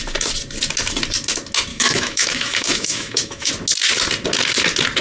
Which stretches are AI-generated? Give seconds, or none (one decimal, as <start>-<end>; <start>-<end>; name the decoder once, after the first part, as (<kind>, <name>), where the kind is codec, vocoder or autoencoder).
1.7-3.5 (autoencoder, DAC-VAE)